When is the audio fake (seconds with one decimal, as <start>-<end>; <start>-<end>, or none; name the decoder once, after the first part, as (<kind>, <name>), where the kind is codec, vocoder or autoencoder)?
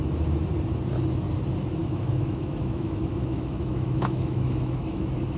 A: 1.8-5.0 (autoencoder, DAC-VAE)